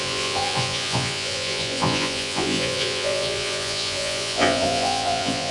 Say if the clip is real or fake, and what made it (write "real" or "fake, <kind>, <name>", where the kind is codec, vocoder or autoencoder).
fake, vocoder, Vocos